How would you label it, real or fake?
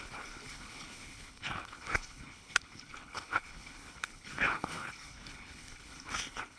fake